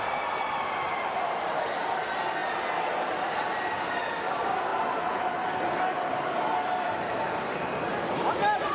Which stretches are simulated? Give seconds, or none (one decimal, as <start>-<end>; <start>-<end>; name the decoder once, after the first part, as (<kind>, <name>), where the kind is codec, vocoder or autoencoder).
0.0-2.4 (vocoder, BigVGAN v2); 3.4-4.7; 5.9-8.7